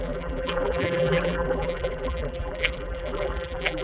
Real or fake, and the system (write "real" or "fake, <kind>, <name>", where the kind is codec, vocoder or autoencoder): fake, vocoder, BigVGAN v2